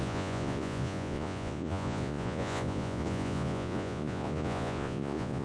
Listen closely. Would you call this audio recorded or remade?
remade